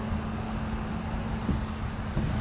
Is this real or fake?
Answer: real